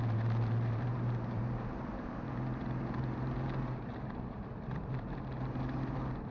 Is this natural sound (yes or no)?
no